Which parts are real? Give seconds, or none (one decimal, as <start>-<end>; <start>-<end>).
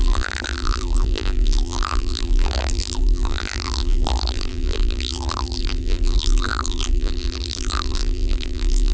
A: none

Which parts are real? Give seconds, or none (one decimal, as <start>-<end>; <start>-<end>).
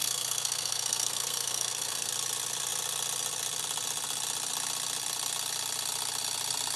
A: 2.1-6.8